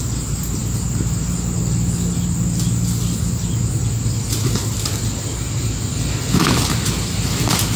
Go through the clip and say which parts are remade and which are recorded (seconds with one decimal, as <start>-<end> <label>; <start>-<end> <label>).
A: 0.0-7.8 recorded

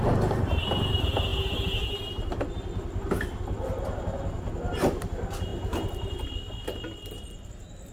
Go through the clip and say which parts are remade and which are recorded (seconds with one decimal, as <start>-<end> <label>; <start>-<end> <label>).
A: 0.0-7.9 recorded

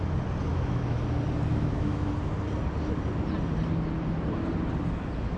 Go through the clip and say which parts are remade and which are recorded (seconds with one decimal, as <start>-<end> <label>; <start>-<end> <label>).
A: 0.0-0.5 recorded; 0.5-1.0 remade; 1.0-1.5 recorded; 1.5-2.1 remade; 2.1-5.4 recorded

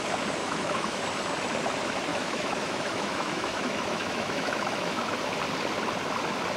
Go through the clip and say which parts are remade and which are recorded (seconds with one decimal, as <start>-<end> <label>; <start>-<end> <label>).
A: 0.0-0.4 recorded; 0.4-1.0 remade; 1.0-2.1 recorded; 2.1-5.2 remade; 5.2-6.6 recorded

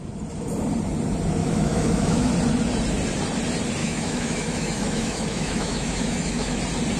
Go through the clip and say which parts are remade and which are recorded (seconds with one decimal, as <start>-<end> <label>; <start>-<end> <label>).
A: 0.0-1.4 recorded; 1.4-2.3 remade; 2.3-3.8 recorded; 3.8-6.6 remade; 6.6-7.0 recorded

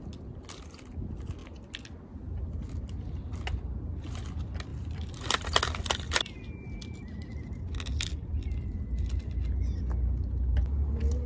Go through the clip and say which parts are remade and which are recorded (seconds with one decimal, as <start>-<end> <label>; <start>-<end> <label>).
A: 0.0-11.3 recorded